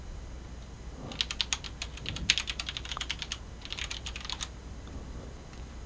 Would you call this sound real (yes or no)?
yes